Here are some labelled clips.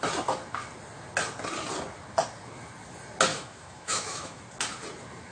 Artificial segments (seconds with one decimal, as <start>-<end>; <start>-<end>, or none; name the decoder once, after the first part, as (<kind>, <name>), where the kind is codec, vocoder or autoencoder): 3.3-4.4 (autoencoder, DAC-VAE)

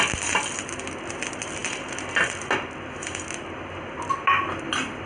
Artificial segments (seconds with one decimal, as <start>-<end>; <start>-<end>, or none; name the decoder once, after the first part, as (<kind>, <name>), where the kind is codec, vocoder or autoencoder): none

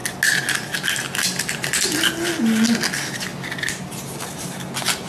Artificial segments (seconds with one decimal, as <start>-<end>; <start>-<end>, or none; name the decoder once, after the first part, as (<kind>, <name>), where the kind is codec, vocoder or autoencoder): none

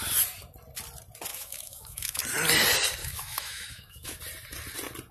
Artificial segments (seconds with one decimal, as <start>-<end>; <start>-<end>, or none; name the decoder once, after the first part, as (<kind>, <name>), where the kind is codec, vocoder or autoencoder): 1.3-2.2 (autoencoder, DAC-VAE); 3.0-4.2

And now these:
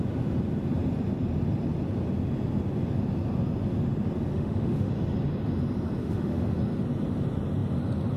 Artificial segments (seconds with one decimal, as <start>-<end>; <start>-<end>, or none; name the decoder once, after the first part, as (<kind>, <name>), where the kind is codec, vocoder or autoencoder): 4.3-4.9 (autoencoder, DAC-VAE); 6.0-6.6